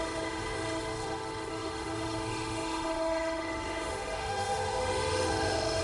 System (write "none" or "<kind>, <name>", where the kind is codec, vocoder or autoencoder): autoencoder, DAC-VAE